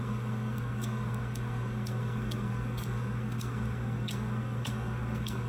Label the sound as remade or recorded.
remade